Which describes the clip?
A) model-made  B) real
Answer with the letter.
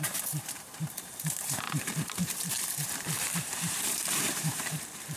A